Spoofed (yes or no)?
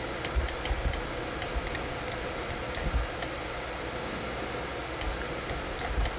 no